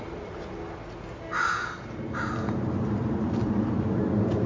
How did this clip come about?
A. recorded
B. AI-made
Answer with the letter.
A